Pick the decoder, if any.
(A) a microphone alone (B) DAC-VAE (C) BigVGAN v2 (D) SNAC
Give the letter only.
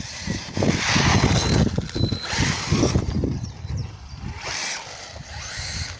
A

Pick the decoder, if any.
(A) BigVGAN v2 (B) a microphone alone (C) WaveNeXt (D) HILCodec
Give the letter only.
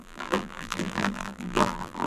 A